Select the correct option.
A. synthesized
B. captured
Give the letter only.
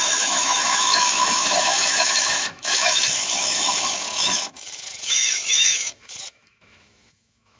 A